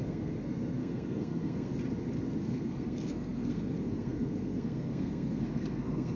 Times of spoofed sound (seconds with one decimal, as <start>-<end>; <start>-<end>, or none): 0.0-1.7; 2.4-6.2